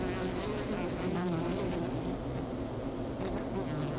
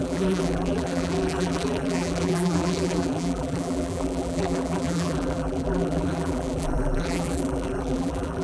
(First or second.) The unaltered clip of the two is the first